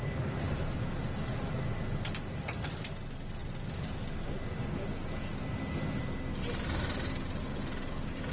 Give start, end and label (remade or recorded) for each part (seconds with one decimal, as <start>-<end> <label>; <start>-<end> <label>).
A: 0.0-8.3 recorded